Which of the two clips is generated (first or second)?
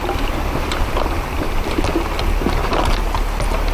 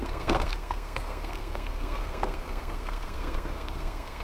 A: second